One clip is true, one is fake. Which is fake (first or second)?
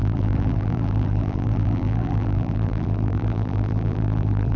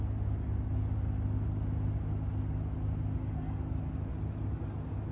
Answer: first